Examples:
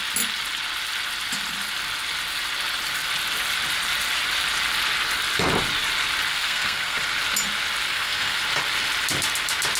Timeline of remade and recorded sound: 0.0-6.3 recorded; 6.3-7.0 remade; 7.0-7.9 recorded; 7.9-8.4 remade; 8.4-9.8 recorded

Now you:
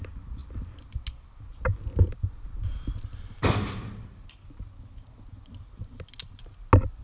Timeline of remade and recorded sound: 0.0-7.0 recorded

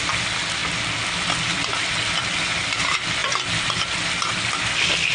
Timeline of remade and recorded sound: 0.0-0.6 recorded; 0.6-2.1 remade; 2.1-5.1 recorded

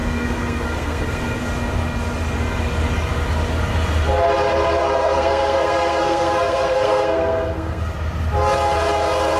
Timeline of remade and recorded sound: 0.0-1.4 remade; 1.4-4.8 recorded; 4.8-7.8 remade; 7.8-9.4 recorded